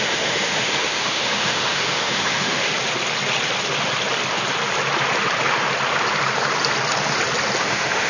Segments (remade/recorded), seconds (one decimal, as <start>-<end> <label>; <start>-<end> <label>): 0.0-2.7 remade; 2.7-7.6 recorded; 7.6-8.1 remade